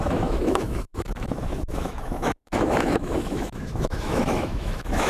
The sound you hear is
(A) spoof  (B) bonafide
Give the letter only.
A